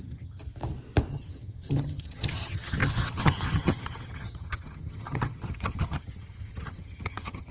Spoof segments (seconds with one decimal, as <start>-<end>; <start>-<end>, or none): 0.0-0.4; 1.1-7.5

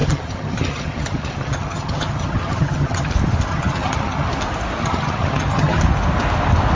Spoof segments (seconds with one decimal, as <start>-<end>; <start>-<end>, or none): 0.0-3.1; 3.5-4.3; 4.8-5.8

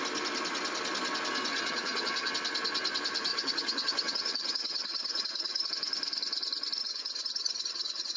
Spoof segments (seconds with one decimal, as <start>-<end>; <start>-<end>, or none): 1.5-2.3; 3.3-5.7; 6.8-8.2

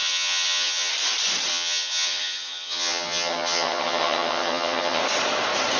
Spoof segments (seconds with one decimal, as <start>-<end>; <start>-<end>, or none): 0.0-0.9; 1.5-5.0

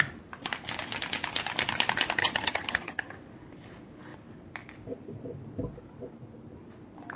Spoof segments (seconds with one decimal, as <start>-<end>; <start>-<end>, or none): 2.2-3.1

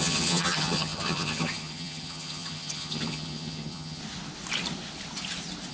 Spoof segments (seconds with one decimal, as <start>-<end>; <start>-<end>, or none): 0.0-4.0

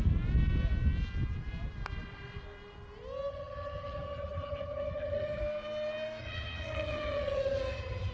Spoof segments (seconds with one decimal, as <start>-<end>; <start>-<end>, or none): 3.3-5.4; 6.2-8.1